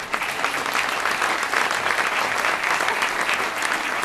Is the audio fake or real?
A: real